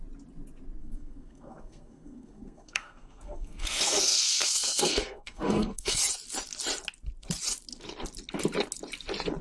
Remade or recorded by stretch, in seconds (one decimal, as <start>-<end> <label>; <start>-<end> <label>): 0.0-0.8 recorded; 0.8-6.0 remade; 6.0-9.4 recorded